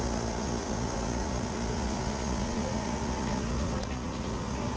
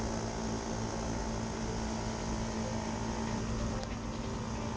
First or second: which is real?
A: second